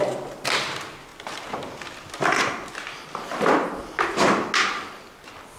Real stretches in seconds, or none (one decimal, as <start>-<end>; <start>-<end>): 0.0-3.3; 3.9-5.6